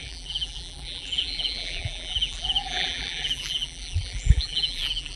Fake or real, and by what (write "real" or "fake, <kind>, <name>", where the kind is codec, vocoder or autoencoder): fake, vocoder, BigVGAN v2